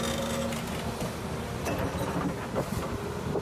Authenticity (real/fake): real